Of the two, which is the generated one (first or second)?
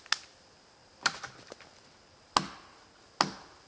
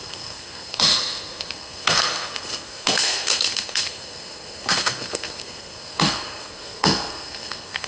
second